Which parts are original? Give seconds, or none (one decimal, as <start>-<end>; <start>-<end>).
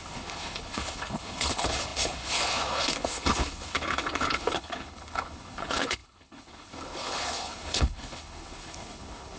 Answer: none